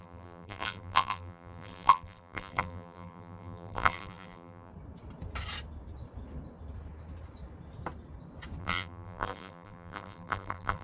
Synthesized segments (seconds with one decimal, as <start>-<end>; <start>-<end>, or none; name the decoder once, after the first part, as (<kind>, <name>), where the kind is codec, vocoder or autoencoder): 0.0-4.7 (vocoder, BigVGAN v2); 8.6-10.8